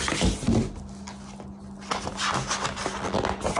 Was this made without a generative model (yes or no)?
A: yes